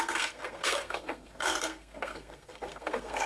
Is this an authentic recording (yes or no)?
no